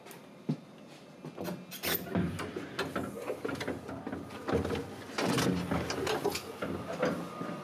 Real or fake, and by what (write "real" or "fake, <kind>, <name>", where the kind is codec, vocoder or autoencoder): real